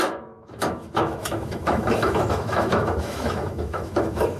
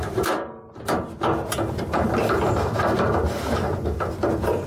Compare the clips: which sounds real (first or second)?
second